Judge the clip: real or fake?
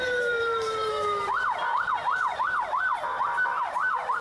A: fake